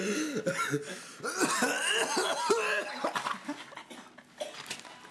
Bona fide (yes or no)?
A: yes